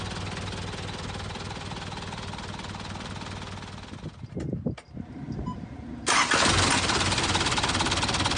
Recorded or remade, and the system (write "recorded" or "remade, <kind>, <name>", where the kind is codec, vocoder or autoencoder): recorded